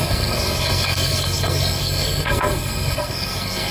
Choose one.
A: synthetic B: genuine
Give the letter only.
A